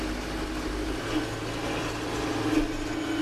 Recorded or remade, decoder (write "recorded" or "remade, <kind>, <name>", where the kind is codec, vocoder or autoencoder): recorded